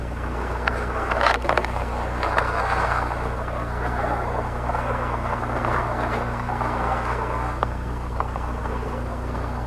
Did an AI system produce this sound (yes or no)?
yes